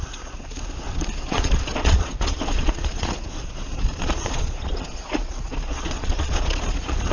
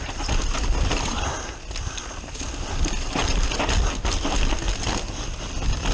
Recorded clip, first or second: second